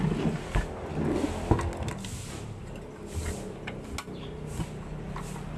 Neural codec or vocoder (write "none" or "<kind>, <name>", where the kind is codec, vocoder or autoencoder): none